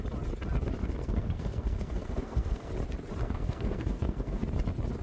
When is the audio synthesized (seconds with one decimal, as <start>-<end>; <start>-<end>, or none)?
0.8-2.7; 3.2-4.4